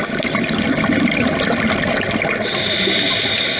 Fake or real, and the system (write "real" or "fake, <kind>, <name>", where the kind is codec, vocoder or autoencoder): real